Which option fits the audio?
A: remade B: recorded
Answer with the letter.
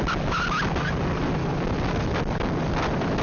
A